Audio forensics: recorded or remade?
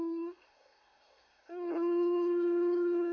remade